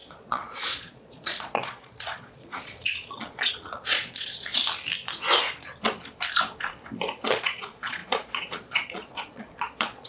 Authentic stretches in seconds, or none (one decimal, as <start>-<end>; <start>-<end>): 4.6-7.3